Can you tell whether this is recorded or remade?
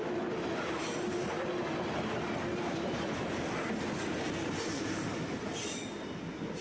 recorded